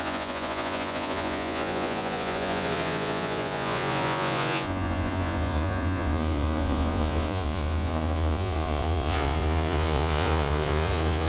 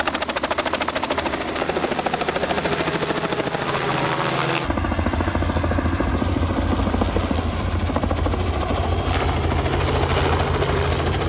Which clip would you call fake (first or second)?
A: first